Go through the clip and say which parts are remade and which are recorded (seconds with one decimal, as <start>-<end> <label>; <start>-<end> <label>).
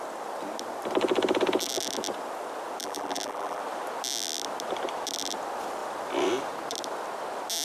0.0-2.8 recorded; 2.8-3.6 remade; 3.6-7.6 recorded